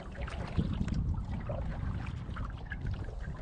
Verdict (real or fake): real